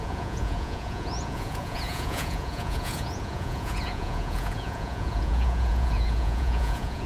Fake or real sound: fake